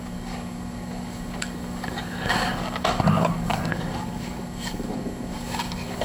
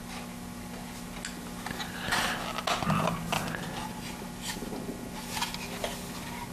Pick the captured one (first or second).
second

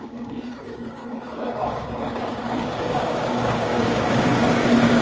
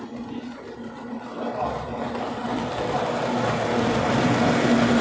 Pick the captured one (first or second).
second